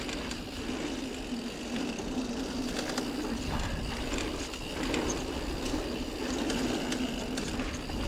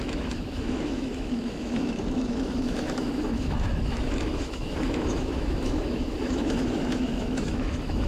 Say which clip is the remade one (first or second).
second